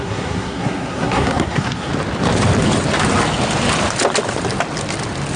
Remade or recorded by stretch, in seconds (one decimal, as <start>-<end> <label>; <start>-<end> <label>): 0.0-1.9 remade; 1.9-5.4 recorded